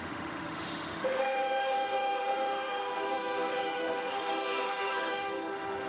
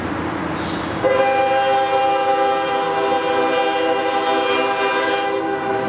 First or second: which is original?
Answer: second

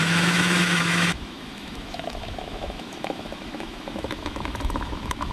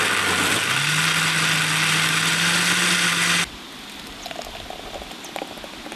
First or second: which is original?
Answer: second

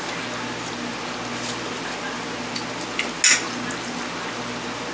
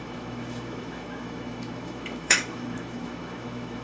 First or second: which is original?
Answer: first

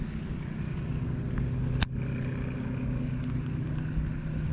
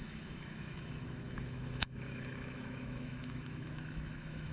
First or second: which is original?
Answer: first